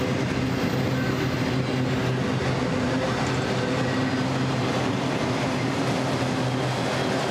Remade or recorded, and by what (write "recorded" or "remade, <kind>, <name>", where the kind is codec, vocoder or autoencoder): recorded